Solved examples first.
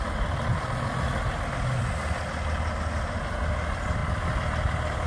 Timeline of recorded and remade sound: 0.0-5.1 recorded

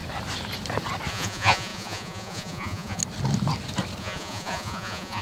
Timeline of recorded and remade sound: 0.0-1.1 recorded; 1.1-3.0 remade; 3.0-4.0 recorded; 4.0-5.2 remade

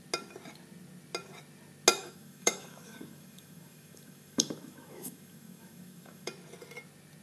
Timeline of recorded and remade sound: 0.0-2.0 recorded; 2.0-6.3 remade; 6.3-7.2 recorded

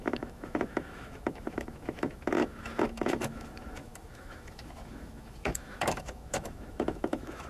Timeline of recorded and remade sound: 0.0-7.5 remade

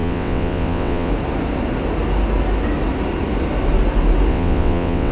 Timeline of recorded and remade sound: 0.0-1.1 remade; 1.1-4.3 recorded; 4.3-5.1 remade

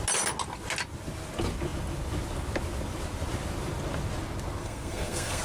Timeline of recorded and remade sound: 0.0-4.6 recorded; 4.6-5.4 remade

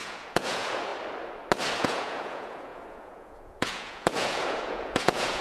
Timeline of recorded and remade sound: 0.0-0.9 remade; 0.9-1.8 recorded; 1.8-5.4 remade